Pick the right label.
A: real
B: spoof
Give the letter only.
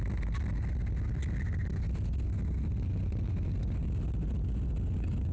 A